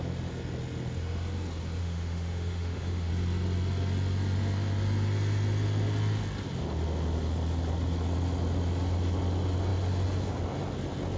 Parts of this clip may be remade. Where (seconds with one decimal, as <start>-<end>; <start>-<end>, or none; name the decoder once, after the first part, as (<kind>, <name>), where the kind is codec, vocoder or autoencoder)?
1.8-3.1 (autoencoder, DAC-VAE)